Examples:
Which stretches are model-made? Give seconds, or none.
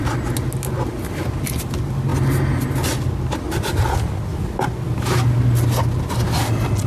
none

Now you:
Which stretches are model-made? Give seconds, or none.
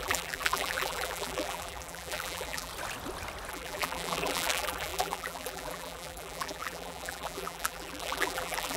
0.0-2.7 (vocoder, BigVGAN v2); 3.5-8.8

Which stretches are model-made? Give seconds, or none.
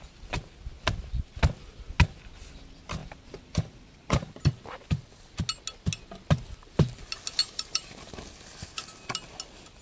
3.0-4.4 (vocoder, BigVGAN v2); 7.4-8.1